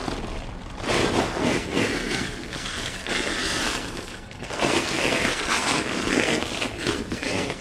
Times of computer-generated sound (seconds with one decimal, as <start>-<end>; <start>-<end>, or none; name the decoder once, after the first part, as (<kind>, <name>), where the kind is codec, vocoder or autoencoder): 1.2-7.6 (codec, SNAC)